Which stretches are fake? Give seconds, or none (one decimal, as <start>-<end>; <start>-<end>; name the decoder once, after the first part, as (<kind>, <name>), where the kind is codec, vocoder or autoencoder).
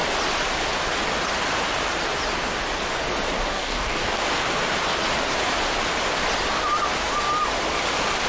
3.5-4.1 (codec, DAC)